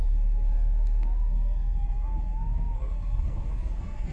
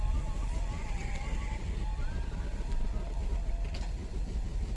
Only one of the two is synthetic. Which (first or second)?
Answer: first